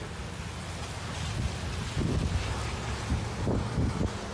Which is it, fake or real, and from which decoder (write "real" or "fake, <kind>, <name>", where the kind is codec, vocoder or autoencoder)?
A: real